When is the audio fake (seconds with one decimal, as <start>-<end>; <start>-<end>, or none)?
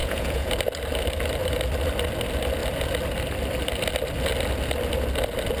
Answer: 0.0-0.5